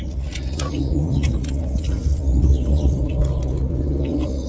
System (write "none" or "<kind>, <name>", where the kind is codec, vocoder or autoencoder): vocoder, Vocos